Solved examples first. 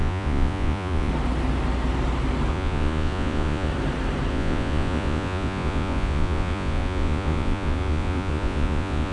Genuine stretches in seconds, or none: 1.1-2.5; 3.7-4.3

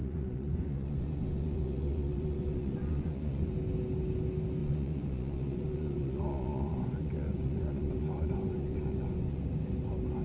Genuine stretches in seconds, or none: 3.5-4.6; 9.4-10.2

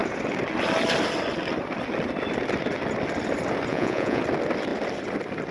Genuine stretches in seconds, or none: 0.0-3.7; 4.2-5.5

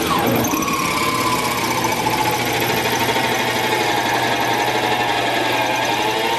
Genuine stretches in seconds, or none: 0.0-6.4

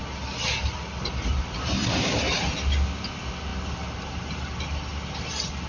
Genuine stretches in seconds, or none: 0.0-5.7

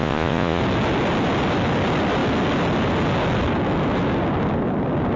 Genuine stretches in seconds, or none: 0.6-5.2

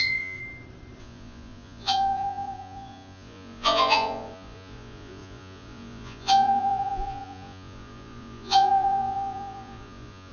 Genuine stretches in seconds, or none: 0.4-1.0